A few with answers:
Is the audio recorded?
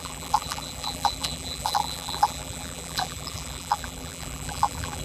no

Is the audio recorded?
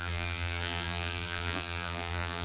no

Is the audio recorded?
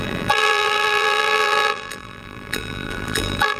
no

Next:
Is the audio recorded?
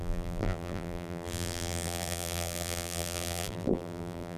no